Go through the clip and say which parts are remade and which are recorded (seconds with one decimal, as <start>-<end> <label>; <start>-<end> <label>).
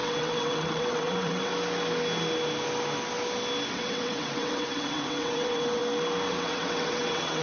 0.0-1.5 remade; 1.5-3.7 recorded; 3.7-5.8 remade; 5.8-6.3 recorded; 6.3-7.4 remade